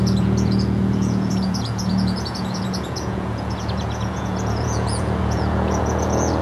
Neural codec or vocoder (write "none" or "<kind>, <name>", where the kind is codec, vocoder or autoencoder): vocoder, Vocos